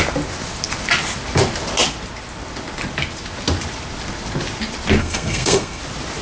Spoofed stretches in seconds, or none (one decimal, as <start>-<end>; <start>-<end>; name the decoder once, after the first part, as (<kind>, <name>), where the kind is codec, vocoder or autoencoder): 5.0-5.8 (codec, SNAC)